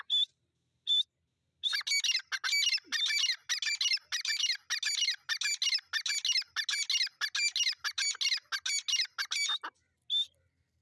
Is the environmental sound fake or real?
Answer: real